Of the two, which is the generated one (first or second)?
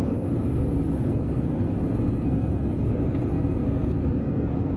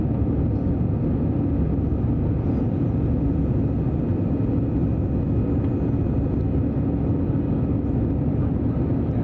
first